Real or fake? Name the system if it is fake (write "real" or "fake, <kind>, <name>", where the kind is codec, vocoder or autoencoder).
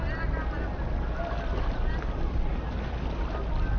real